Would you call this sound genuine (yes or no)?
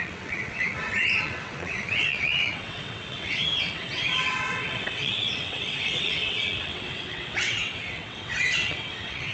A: no